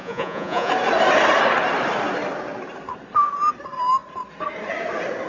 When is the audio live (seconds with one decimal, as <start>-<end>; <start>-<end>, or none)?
0.7-5.3

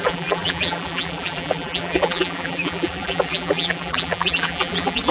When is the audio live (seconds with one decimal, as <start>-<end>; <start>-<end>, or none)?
none

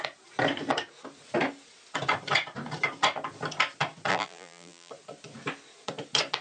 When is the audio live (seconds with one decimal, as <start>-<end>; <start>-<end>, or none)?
0.0-4.1; 4.9-6.4

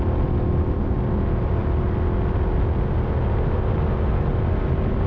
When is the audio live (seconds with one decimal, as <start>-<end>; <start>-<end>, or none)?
0.0-5.1

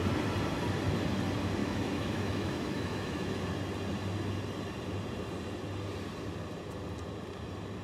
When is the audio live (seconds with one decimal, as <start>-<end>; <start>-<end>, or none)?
0.0-1.6; 3.5-7.8